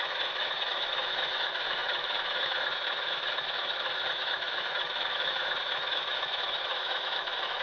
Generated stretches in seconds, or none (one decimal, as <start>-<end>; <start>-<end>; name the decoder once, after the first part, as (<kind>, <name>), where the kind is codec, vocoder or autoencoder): 0.0-7.6 (autoencoder, DAC-VAE)

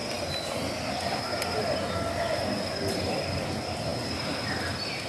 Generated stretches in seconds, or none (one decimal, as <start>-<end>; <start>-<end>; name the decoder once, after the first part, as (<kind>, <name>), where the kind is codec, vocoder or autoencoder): none

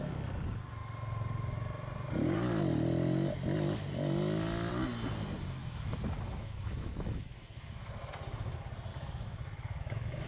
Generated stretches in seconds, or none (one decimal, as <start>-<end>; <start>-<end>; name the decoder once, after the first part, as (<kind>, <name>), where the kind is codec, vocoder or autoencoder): 5.6-8.1 (autoencoder, DAC-VAE); 8.9-10.3

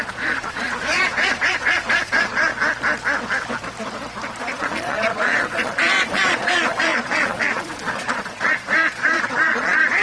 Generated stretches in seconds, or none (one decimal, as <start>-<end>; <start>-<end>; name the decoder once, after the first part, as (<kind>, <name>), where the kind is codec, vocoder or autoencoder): 0.0-2.5 (vocoder, Vocos); 4.4-10.0